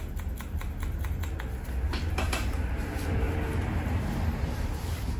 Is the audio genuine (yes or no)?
yes